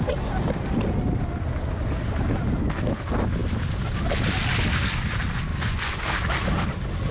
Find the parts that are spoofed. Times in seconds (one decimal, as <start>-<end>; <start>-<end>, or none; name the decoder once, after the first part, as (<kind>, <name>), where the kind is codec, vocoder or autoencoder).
5.5-6.0 (vocoder, Vocos)